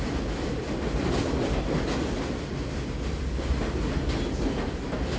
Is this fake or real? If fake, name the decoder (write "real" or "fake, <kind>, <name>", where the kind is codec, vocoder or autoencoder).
real